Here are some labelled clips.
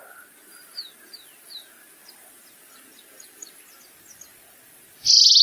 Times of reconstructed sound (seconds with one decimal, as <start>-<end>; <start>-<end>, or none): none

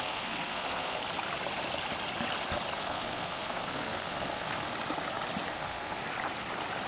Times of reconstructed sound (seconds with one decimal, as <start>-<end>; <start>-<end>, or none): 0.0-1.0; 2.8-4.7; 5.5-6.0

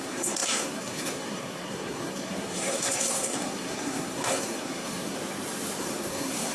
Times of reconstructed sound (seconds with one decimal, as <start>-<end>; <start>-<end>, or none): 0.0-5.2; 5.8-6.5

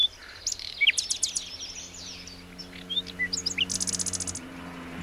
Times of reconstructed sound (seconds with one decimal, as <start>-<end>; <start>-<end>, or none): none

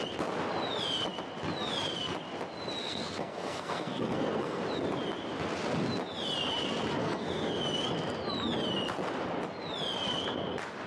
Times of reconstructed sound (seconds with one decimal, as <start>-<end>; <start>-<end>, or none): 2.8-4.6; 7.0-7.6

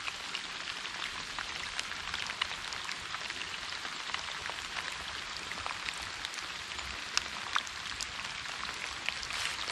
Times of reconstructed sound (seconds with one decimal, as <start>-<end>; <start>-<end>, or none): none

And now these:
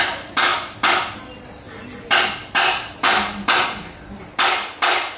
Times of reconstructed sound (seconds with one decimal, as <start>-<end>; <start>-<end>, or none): none